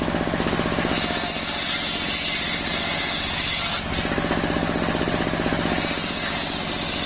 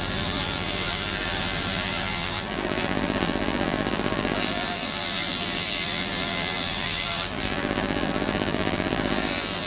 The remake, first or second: second